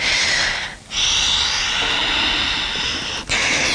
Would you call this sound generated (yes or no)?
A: no